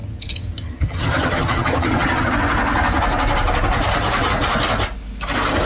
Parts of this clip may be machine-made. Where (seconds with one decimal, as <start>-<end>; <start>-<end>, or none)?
0.0-2.3